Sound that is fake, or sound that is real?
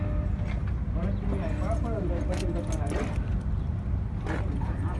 real